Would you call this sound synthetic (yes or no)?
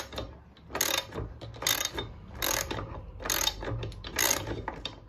no